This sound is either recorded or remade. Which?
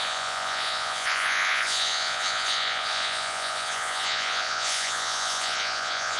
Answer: remade